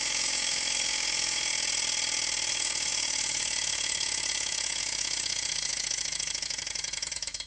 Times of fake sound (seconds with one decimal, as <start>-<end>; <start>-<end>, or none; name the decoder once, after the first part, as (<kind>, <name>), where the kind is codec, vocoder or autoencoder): 0.0-1.5 (autoencoder, DAC-VAE); 2.5-7.5